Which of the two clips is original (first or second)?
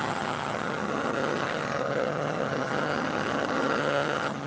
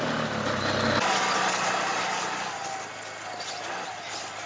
second